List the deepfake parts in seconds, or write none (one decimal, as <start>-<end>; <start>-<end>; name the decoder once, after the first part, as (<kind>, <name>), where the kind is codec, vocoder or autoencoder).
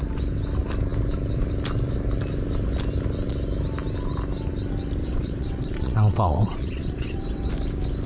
5.0-7.5 (vocoder, WaveNeXt)